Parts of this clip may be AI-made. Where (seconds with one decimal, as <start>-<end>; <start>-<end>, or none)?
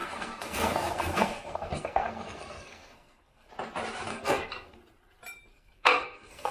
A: 0.0-3.5; 4.1-4.8; 5.5-6.5